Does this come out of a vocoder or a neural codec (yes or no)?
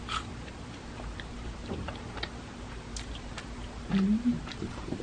yes